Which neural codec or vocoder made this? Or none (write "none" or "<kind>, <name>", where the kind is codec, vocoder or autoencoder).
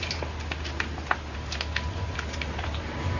none